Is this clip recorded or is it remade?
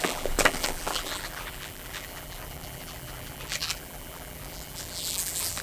remade